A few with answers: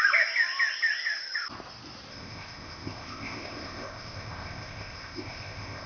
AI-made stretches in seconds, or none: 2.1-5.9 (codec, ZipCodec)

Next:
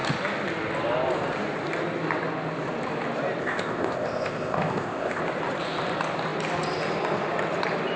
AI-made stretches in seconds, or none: 3.4-5.2 (codec, ZipCodec)

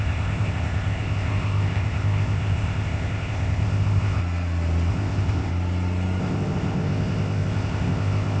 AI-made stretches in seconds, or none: 0.0-4.2 (codec, ZipCodec); 4.9-5.5; 6.2-8.4

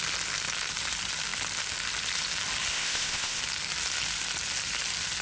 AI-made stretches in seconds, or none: 2.7-3.4 (codec, ZipCodec)

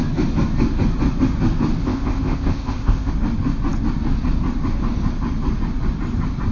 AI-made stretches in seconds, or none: 1.8-3.1 (codec, ZipCodec)

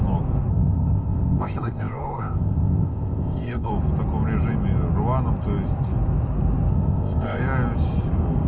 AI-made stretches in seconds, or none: 0.5-3.7 (codec, ZipCodec); 6.7-7.4

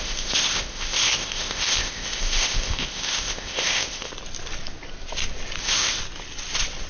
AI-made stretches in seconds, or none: 0.0-4.1 (codec, ZipCodec); 5.6-6.0

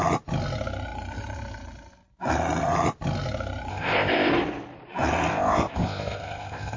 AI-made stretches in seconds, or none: 3.7-4.3 (codec, ZipCodec); 5.3-6.8